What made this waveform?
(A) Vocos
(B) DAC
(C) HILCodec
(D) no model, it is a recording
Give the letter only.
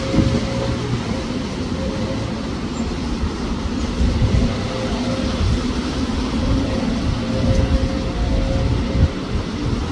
D